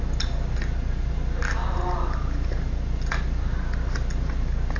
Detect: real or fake real